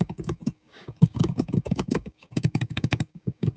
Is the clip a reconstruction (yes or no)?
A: yes